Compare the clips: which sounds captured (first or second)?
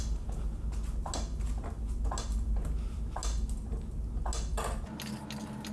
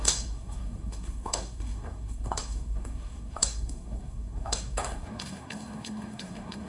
first